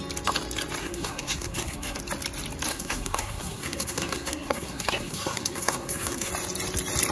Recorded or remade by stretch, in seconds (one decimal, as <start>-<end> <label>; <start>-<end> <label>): 0.0-0.8 recorded; 0.8-2.0 remade; 2.0-2.7 recorded; 2.7-6.3 remade; 6.3-7.1 recorded